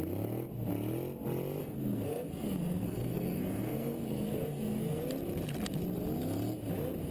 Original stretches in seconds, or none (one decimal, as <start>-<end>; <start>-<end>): 0.0-1.6; 5.0-7.1